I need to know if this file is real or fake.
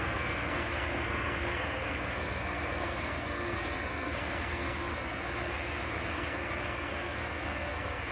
fake